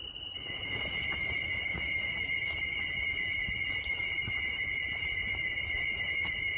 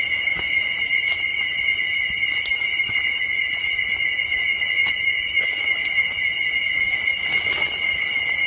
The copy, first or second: first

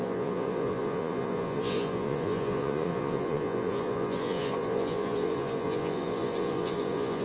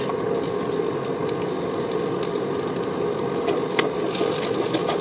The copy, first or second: first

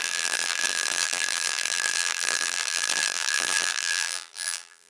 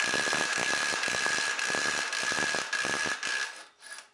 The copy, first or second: first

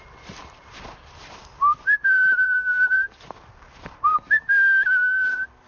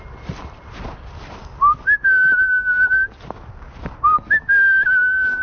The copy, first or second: first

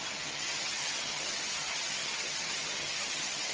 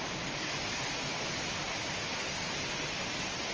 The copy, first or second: first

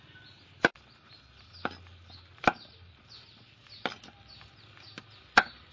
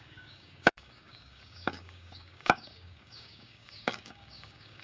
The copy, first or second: second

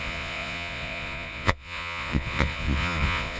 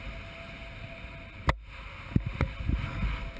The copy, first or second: first